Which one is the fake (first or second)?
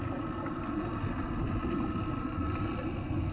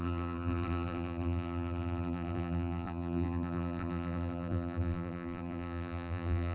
second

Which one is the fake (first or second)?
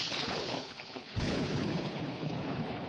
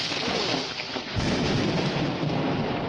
first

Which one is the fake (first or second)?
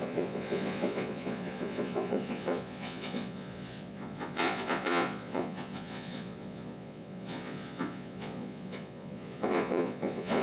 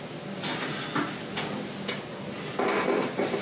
first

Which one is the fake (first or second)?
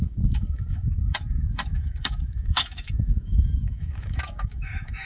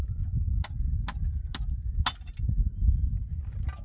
first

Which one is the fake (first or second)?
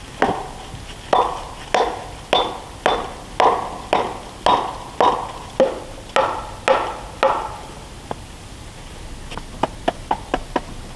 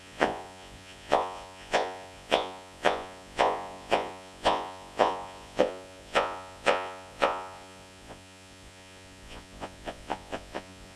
second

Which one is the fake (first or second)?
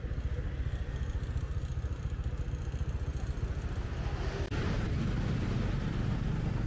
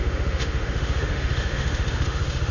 second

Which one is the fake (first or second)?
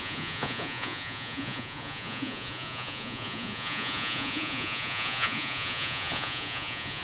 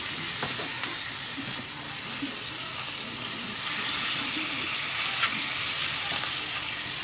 first